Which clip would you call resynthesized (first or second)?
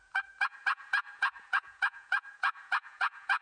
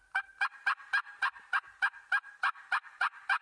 first